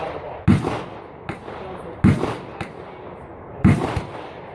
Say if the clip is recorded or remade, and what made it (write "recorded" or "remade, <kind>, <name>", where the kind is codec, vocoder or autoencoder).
recorded